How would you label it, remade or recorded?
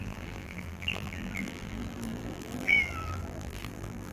remade